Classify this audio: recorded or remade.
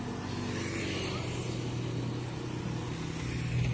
recorded